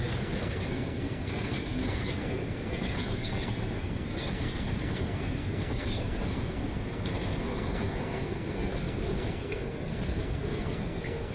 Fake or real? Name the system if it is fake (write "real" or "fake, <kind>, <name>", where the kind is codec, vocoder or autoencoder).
fake, codec, SNAC